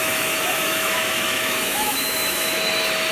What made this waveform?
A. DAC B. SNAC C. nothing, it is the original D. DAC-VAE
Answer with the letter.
D